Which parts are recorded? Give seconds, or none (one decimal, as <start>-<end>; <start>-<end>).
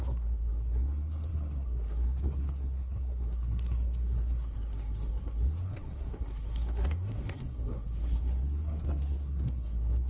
none